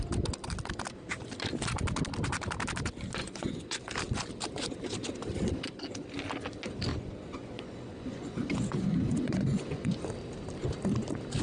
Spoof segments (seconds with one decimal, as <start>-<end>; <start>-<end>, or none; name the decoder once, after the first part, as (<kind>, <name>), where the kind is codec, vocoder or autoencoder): 3.2-3.8 (vocoder, Vocos); 6.9-10.0